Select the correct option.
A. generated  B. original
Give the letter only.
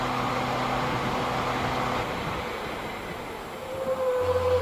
B